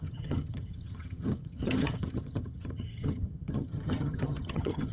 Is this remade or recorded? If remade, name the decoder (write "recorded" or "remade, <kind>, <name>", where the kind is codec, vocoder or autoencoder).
remade, vocoder, HiFi-GAN